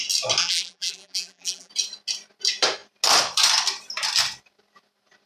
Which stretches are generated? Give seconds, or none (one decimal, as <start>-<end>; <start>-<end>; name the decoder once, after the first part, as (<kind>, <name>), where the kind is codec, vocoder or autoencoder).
0.4-1.7 (vocoder, BigVGAN v2)